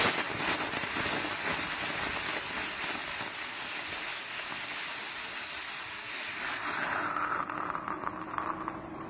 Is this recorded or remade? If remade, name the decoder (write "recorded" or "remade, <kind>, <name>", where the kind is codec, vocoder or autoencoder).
recorded